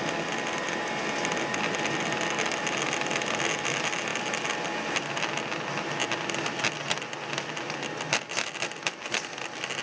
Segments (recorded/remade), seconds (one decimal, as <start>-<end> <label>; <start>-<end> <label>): 0.0-9.8 recorded